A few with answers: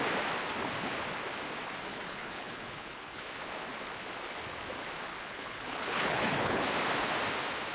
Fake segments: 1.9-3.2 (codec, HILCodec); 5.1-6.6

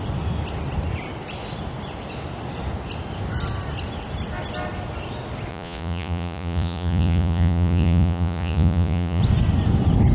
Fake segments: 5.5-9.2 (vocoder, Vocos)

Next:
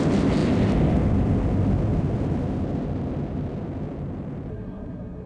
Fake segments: 4.5-5.3 (codec, SNAC)